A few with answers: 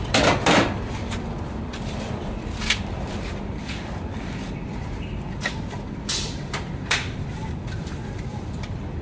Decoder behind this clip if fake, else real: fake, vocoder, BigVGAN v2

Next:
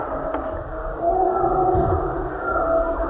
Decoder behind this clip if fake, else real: real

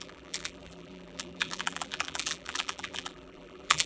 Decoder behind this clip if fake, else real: fake, vocoder, BigVGAN v2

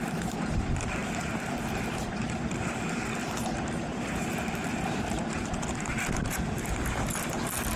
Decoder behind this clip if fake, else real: real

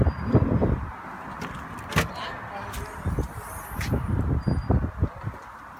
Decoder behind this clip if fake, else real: real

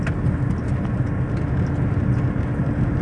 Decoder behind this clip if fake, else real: real